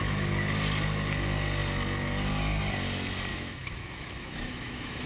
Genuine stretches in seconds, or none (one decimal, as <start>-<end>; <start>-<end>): 0.0-3.3